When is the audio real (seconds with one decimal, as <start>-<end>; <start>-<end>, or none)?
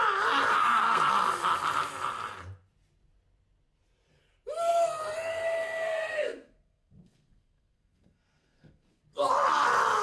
0.0-0.5; 1.1-5.3; 9.0-10.0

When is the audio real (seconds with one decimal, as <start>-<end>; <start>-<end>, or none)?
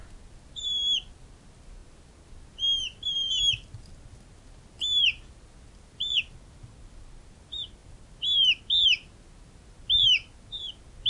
0.0-11.1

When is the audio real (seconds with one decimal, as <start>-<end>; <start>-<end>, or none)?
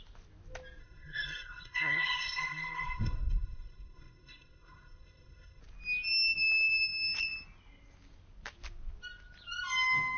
0.0-0.8; 5.6-10.2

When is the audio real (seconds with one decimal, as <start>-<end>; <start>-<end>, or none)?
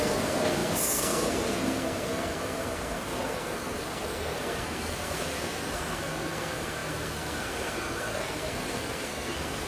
none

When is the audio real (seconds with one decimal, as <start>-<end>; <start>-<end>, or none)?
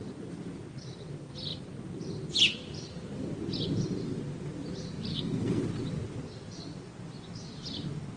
0.0-5.1; 5.6-8.2